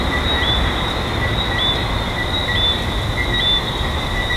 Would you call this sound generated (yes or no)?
no